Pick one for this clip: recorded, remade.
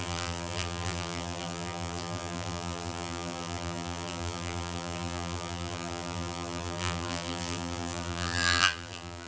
remade